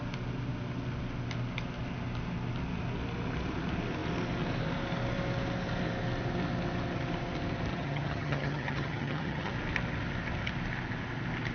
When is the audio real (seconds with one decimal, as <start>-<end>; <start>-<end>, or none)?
0.0-7.7; 9.5-11.5